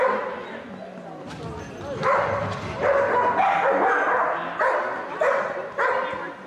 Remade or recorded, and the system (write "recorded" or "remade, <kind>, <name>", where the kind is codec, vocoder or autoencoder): recorded